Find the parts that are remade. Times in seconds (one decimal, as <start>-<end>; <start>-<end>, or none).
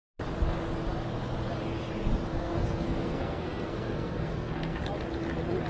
2.3-4.8